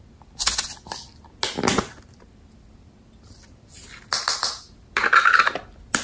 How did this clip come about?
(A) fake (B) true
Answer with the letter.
B